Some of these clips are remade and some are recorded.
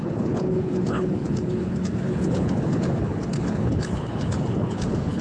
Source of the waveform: remade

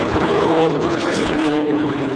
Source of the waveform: remade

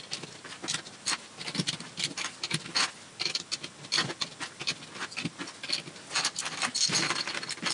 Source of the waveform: recorded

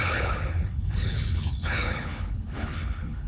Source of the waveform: remade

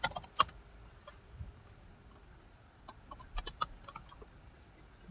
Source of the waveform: recorded